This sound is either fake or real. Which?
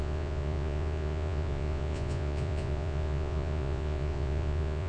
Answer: fake